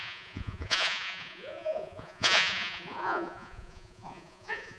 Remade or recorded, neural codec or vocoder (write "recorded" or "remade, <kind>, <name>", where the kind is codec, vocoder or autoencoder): remade, vocoder, Vocos